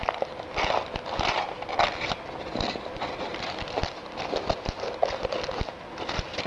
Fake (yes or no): no